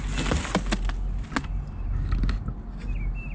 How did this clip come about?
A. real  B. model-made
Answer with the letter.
A